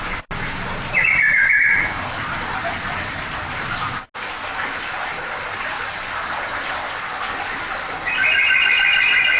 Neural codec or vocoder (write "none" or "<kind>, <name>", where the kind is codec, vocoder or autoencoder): none